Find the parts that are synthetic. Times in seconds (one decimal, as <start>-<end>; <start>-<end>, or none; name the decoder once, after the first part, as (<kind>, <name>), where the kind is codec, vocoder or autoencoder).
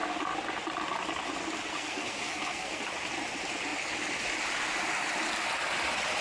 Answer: 1.7-2.8 (codec, SNAC)